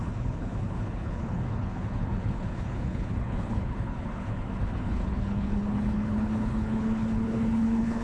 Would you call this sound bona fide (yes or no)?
no